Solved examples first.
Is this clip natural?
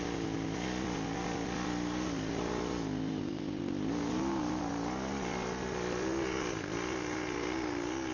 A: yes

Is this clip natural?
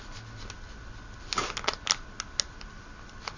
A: yes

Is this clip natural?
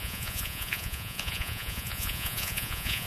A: no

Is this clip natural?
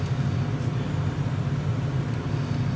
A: yes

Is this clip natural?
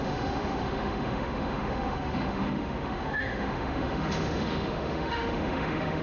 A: no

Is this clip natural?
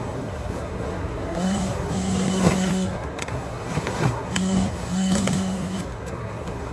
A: no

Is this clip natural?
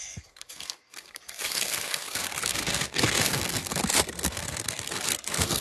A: no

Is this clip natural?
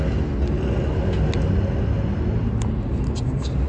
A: yes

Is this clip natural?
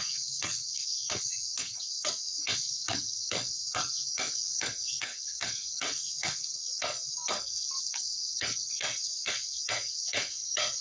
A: no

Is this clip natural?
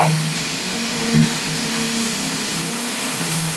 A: no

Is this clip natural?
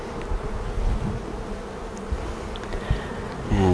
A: yes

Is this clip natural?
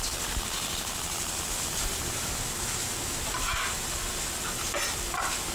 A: yes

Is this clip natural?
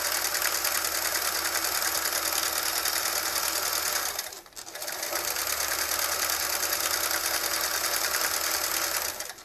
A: yes